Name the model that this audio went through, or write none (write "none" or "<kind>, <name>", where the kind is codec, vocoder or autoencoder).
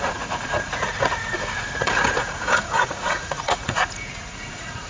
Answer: vocoder, Vocos